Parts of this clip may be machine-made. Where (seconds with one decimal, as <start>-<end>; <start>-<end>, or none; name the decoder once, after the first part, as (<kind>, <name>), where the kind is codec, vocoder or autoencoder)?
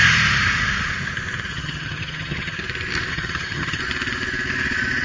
1.5-2.6 (vocoder, HiFi-GAN); 3.1-3.8